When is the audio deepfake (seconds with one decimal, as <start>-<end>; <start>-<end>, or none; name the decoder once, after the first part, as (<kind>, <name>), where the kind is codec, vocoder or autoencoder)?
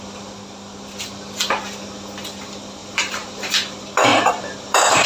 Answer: 2.8-3.5 (vocoder, BigVGAN v2); 4.1-5.1